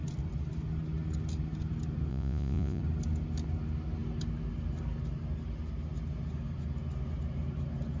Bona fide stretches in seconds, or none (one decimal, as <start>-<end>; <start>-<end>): 0.0-2.1; 2.8-8.0